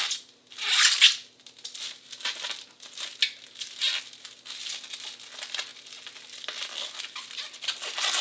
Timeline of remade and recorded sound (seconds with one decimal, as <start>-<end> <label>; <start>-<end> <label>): 0.0-8.2 recorded